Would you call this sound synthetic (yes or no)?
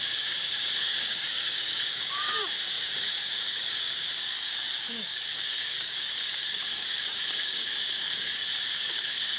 yes